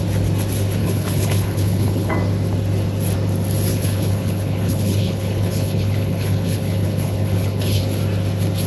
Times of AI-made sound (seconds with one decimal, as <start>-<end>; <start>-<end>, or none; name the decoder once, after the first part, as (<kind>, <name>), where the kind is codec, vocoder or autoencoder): 0.8-2.1 (codec, HILCodec); 3.7-7.8